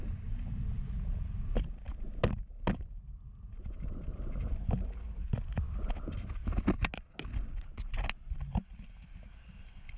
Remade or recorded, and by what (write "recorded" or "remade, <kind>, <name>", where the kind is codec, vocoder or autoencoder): recorded